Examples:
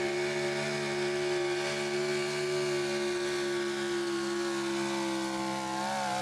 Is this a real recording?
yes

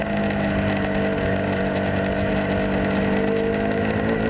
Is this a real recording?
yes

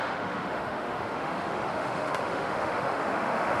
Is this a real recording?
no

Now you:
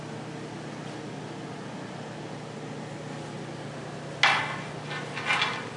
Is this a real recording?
yes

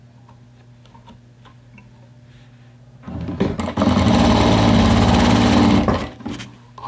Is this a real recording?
yes